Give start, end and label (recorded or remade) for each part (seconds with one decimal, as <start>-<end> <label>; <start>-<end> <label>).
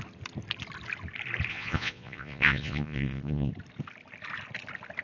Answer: 0.0-1.5 recorded; 1.5-3.5 remade; 3.5-5.0 recorded